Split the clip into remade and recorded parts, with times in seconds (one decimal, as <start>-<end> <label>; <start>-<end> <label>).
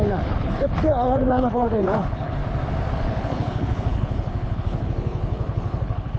0.0-2.4 remade; 2.4-2.9 recorded; 2.9-6.2 remade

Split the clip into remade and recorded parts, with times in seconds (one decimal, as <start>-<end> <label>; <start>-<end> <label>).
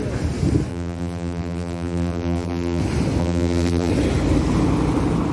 0.0-0.7 recorded; 0.7-2.8 remade; 2.8-3.2 recorded; 3.2-3.9 remade; 3.9-5.3 recorded